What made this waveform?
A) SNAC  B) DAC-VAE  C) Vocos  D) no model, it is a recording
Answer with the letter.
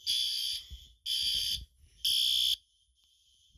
D